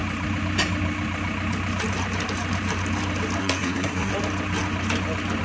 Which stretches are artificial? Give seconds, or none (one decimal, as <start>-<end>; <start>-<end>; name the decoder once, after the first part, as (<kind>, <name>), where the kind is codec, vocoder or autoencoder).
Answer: 3.4-4.1 (codec, SNAC)